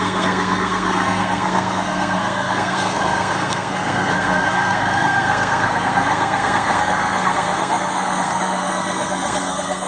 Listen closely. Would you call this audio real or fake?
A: fake